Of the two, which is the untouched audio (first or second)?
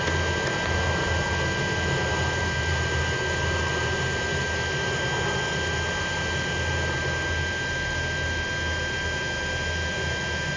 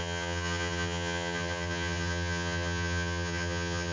first